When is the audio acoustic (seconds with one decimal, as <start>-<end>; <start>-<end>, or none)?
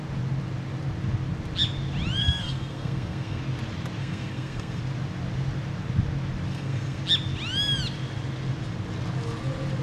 0.0-2.2; 3.4-4.0; 4.8-6.5; 7.0-9.8